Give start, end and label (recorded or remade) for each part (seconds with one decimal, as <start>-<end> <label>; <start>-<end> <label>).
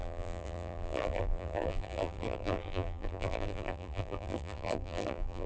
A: 0.0-5.5 remade